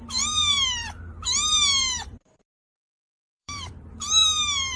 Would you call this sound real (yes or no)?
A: no